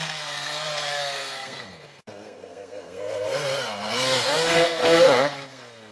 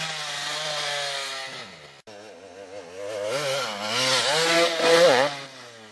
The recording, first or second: second